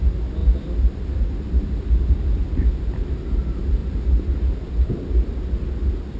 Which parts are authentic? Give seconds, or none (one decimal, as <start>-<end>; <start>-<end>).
0.0-6.2